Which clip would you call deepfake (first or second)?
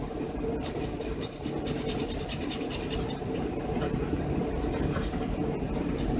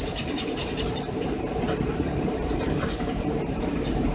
second